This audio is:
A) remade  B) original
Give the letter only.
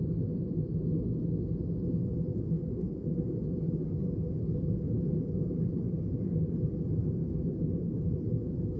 B